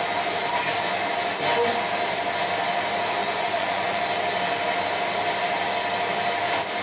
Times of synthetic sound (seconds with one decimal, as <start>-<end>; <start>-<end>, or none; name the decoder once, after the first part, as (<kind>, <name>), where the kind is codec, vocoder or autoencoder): 3.2-4.0 (vocoder, Vocos)